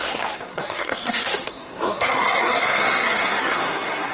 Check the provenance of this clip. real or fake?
fake